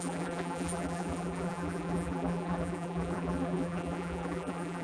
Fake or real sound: fake